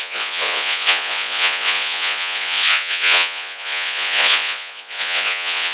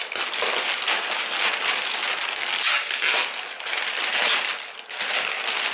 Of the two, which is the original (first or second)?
second